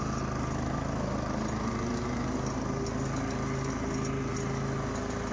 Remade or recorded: recorded